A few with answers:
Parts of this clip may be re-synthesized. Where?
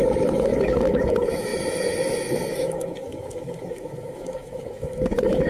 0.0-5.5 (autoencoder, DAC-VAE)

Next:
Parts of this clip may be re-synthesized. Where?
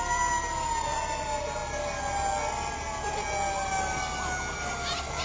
none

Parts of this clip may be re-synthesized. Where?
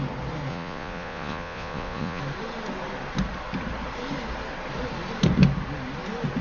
0.5-2.2 (vocoder, Vocos)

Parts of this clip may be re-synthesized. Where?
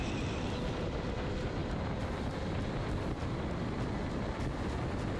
none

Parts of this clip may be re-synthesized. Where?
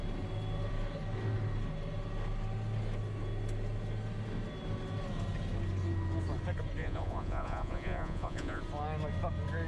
6.8-8.6 (vocoder, Vocos)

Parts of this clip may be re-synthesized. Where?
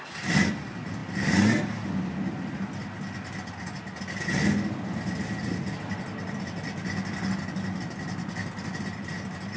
none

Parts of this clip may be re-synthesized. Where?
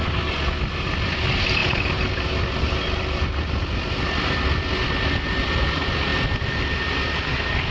none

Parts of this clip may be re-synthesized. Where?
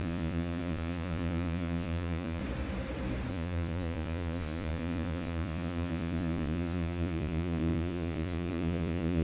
0.0-2.4 (vocoder, Vocos); 3.3-9.2